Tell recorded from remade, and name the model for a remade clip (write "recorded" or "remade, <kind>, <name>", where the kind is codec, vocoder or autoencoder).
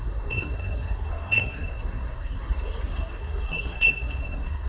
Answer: remade, codec, SNAC